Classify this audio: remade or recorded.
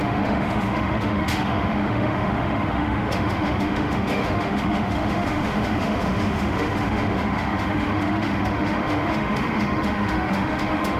remade